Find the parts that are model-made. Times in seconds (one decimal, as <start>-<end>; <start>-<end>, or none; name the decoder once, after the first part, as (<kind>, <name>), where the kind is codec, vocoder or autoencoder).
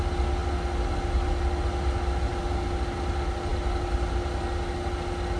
none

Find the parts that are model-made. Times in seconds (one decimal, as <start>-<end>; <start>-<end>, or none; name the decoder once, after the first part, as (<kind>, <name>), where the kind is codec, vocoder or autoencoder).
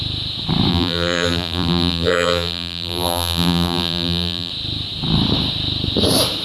0.7-4.5 (vocoder, BigVGAN v2)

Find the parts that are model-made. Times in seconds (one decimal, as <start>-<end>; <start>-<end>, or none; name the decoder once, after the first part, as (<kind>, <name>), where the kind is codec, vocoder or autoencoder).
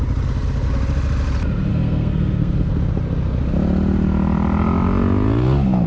1.7-2.7 (codec, SNAC)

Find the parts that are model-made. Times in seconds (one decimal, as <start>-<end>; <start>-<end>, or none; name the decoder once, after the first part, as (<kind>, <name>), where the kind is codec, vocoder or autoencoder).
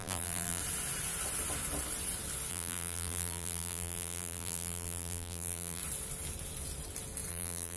0.0-0.6 (vocoder, BigVGAN v2); 2.5-5.8; 7.3-7.8